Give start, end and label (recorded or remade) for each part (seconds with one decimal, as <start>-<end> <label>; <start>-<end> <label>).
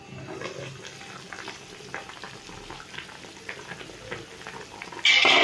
0.0-5.4 recorded